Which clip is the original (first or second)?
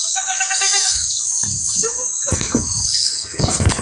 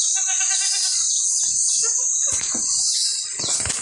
second